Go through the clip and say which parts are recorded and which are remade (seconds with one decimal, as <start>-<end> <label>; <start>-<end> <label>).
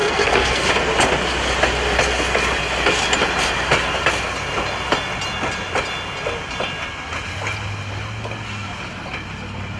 0.0-0.7 remade; 0.7-9.8 recorded